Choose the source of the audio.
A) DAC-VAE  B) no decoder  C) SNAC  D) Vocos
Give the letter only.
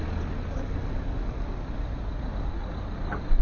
B